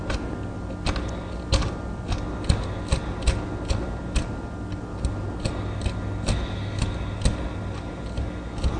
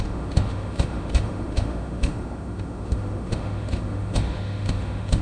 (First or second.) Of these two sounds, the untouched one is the first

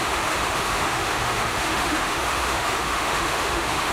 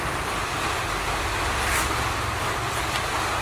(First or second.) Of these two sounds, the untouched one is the second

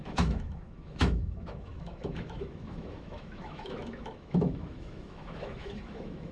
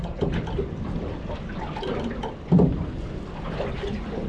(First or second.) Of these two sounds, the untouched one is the second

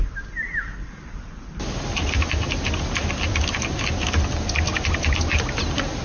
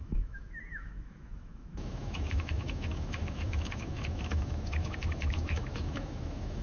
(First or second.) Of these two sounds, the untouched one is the first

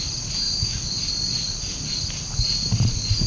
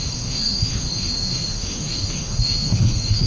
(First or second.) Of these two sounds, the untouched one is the first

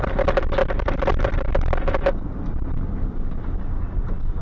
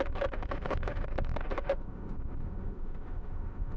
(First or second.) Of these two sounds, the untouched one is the first